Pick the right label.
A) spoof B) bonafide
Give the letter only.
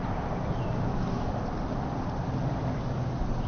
B